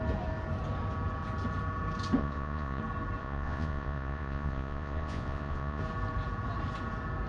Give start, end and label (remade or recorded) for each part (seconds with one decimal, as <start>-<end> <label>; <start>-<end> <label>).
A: 0.0-2.2 recorded; 2.2-2.8 remade; 2.8-3.2 recorded; 3.2-5.8 remade; 5.8-7.3 recorded